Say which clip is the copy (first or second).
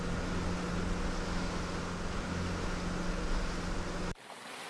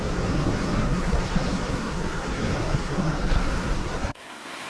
second